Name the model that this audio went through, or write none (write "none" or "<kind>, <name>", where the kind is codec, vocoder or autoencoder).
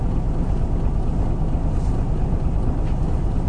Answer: none